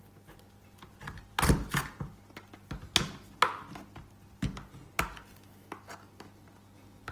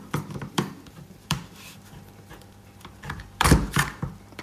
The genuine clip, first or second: first